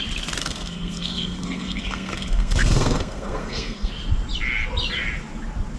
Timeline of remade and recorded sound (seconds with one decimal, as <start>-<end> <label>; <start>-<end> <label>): 0.0-0.4 recorded; 0.4-3.9 remade; 3.9-5.8 recorded